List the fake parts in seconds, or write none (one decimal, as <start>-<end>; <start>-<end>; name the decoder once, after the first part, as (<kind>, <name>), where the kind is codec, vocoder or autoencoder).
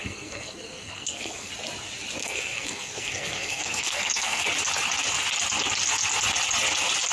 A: 0.0-1.5 (codec, SNAC); 2.2-4.4